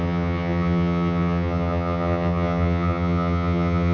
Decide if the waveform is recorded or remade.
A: remade